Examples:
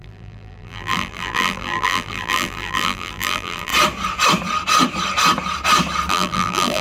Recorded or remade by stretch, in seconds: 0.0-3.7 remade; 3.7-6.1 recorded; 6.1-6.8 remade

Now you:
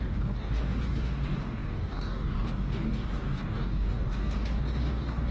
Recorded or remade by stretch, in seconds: 0.0-5.3 remade